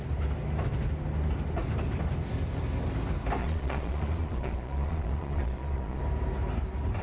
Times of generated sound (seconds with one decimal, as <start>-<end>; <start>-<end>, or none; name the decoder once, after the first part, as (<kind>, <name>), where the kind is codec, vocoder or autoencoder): 3.4-6.0 (vocoder, Vocos)